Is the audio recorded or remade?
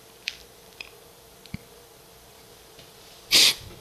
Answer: remade